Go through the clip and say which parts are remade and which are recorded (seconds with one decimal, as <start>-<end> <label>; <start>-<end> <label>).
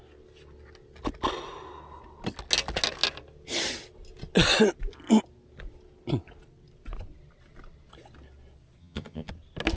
0.0-8.8 recorded; 8.8-9.3 remade; 9.3-9.8 recorded